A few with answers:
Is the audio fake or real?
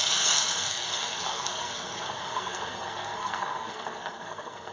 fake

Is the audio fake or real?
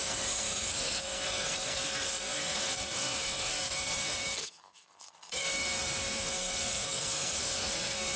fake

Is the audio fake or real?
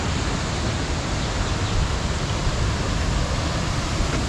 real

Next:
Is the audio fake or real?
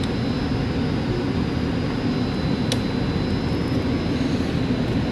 real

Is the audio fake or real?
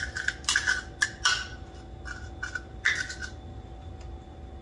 real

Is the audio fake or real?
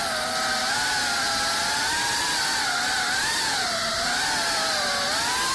real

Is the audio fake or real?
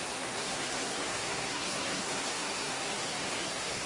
fake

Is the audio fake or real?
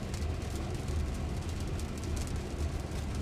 real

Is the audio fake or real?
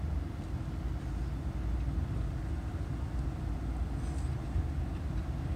real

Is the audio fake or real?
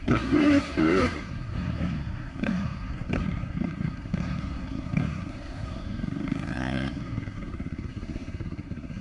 fake